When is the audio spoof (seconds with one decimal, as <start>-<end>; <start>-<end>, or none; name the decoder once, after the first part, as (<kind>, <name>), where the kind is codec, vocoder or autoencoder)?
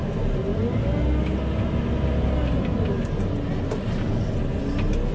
none